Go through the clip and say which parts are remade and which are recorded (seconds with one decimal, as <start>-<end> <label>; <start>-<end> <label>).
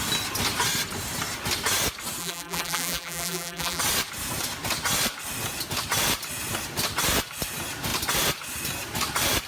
0.0-2.2 recorded; 2.2-3.8 remade; 3.8-9.5 recorded